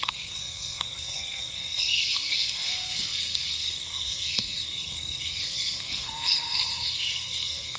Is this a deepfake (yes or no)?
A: yes